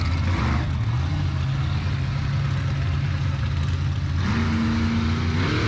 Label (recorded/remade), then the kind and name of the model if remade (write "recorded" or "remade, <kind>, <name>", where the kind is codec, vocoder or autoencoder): recorded